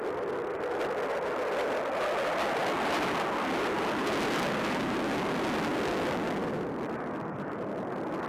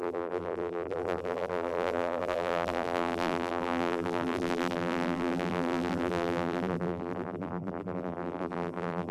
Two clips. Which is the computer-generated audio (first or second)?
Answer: second